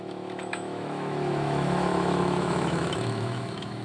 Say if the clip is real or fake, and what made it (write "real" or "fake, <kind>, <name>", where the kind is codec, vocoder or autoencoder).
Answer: fake, autoencoder, DAC-VAE